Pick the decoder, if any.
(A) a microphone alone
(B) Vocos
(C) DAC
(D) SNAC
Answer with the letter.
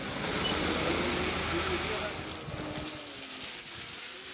A